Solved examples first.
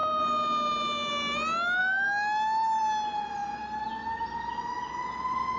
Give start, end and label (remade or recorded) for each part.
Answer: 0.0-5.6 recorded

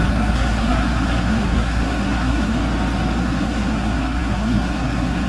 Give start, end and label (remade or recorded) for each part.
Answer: 0.0-2.6 remade; 2.6-3.2 recorded; 3.2-5.3 remade

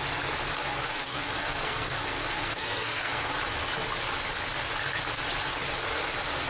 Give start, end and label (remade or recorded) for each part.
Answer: 0.0-0.7 recorded; 0.7-3.3 remade; 3.3-6.5 recorded

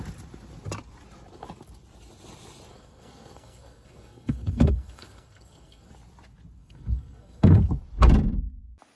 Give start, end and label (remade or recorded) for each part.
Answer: 0.0-2.7 recorded; 2.7-5.9 remade; 5.9-6.6 recorded; 6.6-7.8 remade; 7.8-9.0 recorded

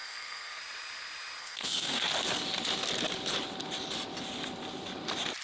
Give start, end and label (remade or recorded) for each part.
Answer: 0.0-0.6 remade; 0.6-1.4 recorded; 1.4-2.0 remade; 2.0-5.4 recorded

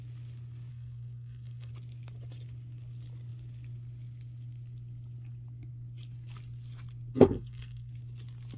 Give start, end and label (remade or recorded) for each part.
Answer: 0.0-0.7 recorded; 0.7-1.7 remade; 1.7-7.1 recorded; 7.1-7.9 remade; 7.9-8.6 recorded

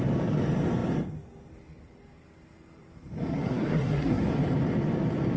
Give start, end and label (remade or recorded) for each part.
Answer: 0.0-3.3 recorded; 3.3-4.2 remade; 4.2-5.4 recorded